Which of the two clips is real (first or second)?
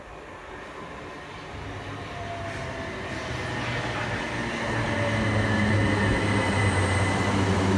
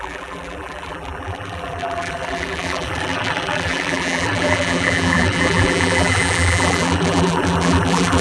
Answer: first